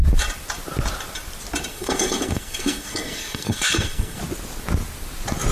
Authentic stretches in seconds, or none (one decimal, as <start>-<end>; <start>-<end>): 0.0-1.7; 4.2-5.5